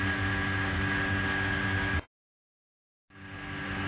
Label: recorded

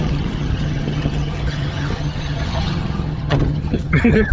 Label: remade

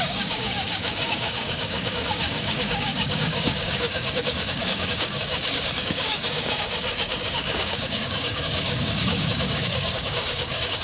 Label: remade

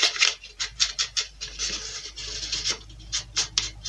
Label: recorded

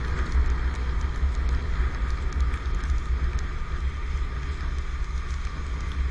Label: recorded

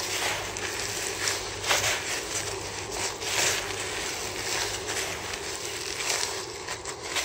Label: recorded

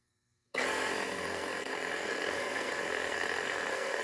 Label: remade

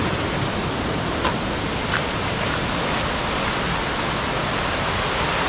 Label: recorded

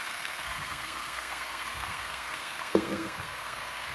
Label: remade